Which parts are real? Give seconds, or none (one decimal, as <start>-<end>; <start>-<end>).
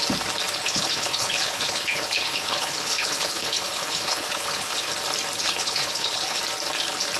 0.0-0.6; 4.9-5.4; 6.4-7.2